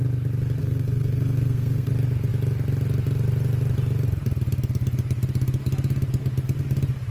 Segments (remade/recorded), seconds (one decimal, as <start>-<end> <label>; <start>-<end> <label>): 0.0-0.6 recorded; 0.6-1.9 remade; 1.9-7.1 recorded